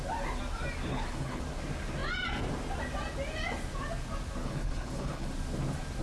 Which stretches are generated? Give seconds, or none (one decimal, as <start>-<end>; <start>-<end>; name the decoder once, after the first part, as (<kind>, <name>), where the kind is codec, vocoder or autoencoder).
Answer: 0.9-1.4 (codec, HILCodec); 4.4-5.3